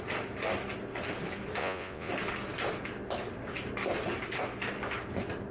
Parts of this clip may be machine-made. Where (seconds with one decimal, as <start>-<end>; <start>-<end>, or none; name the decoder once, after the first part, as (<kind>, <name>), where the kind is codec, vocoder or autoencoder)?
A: 1.6-2.1 (vocoder, Vocos)